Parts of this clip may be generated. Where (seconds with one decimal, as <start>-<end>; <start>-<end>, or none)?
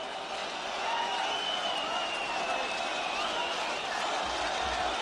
0.4-2.2; 2.9-3.6